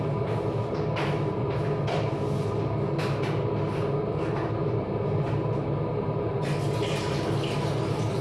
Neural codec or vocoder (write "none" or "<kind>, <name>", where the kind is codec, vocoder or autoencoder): none